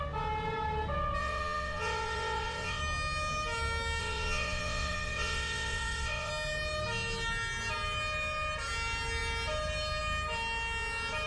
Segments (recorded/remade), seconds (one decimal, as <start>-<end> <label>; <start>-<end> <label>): 0.0-1.2 recorded; 1.2-2.8 remade; 2.8-4.0 recorded; 4.0-6.3 remade; 6.3-11.3 recorded